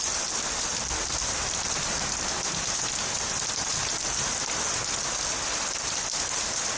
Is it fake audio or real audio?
real